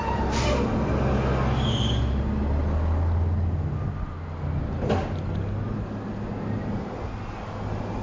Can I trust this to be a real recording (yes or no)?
yes